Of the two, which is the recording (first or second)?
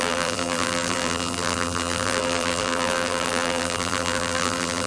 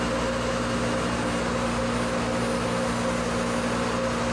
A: second